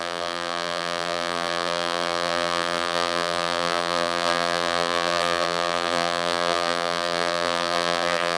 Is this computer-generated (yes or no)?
yes